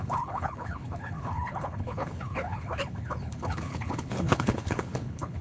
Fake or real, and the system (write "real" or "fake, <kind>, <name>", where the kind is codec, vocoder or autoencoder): fake, codec, HILCodec